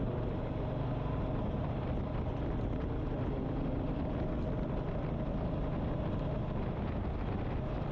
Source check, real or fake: real